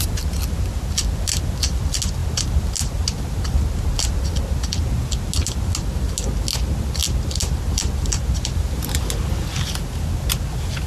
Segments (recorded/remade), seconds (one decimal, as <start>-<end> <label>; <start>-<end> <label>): 0.0-10.9 recorded